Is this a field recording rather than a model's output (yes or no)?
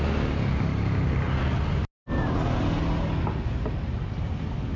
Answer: yes